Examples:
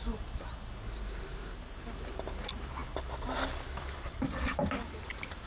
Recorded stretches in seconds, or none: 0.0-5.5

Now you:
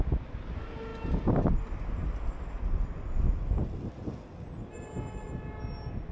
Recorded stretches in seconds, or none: 0.0-6.1

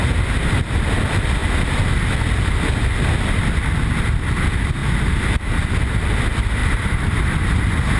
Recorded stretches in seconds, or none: 0.0-6.6; 7.6-8.0

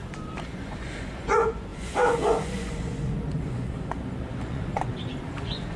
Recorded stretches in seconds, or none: none

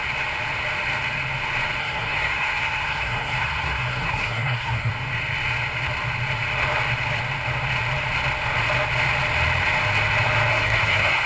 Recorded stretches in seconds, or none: 0.0-1.8; 4.9-10.5